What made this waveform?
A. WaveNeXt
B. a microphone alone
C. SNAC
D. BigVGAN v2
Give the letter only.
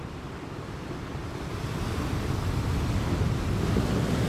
B